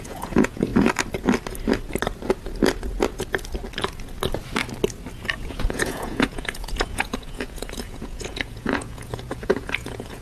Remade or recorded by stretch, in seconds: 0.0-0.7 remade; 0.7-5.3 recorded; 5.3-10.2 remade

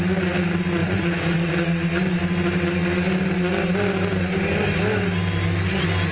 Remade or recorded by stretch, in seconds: 0.0-0.8 recorded; 0.8-1.5 remade; 1.5-6.1 recorded

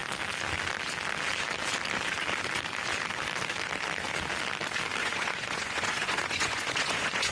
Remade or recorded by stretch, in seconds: 0.0-5.0 recorded; 5.0-7.3 remade